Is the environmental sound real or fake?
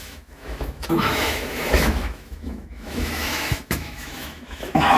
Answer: fake